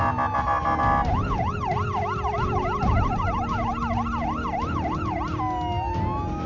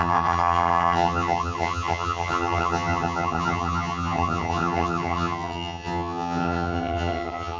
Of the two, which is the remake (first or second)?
second